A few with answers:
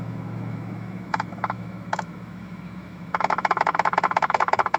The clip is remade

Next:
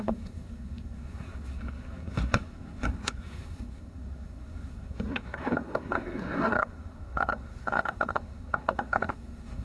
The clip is remade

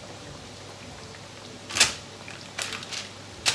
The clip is recorded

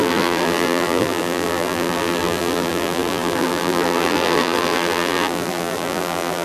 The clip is remade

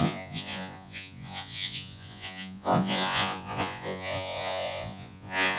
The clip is remade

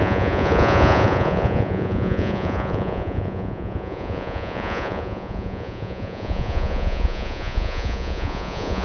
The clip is remade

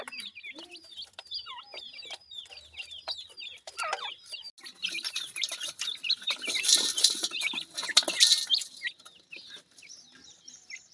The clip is recorded